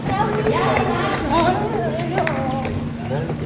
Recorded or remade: recorded